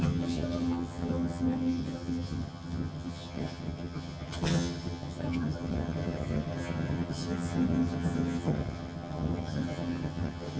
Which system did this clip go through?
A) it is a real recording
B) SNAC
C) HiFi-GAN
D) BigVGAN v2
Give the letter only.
C